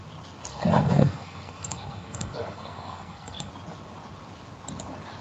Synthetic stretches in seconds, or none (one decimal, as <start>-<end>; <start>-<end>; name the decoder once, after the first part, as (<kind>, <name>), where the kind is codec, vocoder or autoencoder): 0.5-3.5 (codec, SNAC)